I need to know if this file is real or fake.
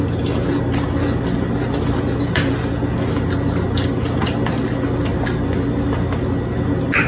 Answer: real